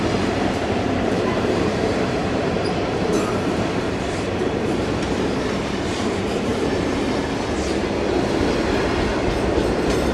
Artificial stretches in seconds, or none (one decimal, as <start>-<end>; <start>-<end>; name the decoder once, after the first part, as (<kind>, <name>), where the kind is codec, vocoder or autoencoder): 0.0-6.5 (vocoder, BigVGAN v2); 9.1-10.1